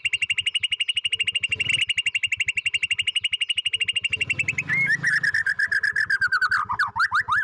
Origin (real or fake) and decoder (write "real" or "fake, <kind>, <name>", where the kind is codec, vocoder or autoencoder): real